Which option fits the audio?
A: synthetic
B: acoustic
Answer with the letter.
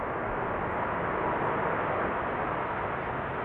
B